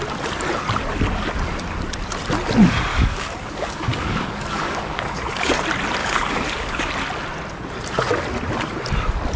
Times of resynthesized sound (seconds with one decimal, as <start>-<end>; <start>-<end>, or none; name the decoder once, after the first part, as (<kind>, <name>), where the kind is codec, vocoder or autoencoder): 2.9-5.6 (codec, DAC); 6.0-6.9